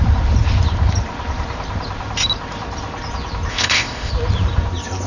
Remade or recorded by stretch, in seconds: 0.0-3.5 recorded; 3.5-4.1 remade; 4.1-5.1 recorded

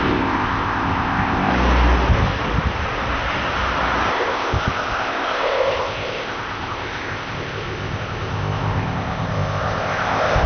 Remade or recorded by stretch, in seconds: 0.0-1.5 remade; 1.5-4.1 recorded; 4.1-10.5 remade

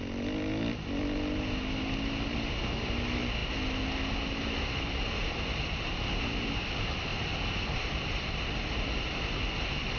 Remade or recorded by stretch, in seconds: 0.0-10.0 recorded

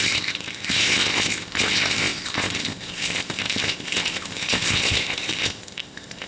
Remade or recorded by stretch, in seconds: 0.0-6.3 remade

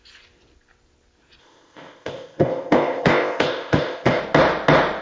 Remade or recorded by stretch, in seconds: 0.0-1.4 recorded; 1.4-4.2 remade; 4.2-5.0 recorded